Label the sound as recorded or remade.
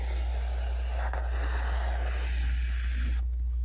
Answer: recorded